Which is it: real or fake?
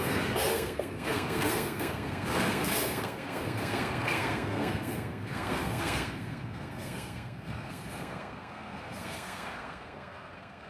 fake